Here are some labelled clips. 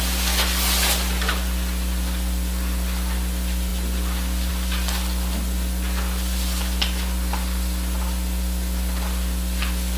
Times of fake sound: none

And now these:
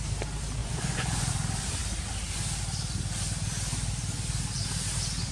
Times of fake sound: 0.6-1.3